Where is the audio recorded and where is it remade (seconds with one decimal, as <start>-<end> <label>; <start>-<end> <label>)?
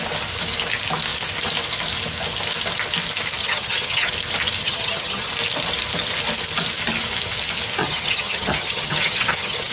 0.0-3.4 recorded; 3.4-4.1 remade; 4.1-4.6 recorded; 4.6-5.3 remade; 5.3-7.8 recorded; 7.8-9.7 remade